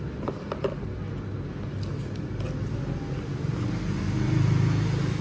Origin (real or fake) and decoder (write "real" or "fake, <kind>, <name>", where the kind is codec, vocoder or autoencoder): real